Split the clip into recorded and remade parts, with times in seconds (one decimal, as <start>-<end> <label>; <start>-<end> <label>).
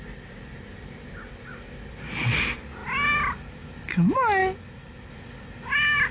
0.0-6.1 recorded